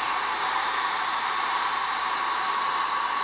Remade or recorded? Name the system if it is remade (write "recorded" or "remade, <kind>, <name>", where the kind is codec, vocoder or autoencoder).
remade, vocoder, BigVGAN v2